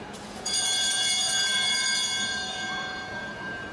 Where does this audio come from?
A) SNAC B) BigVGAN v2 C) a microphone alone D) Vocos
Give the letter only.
D